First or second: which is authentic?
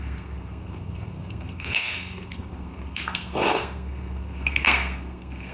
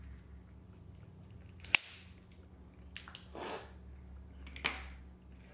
second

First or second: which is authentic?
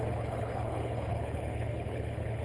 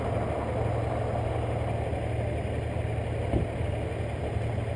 second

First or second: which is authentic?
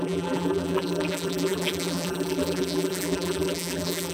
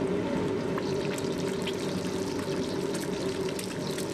second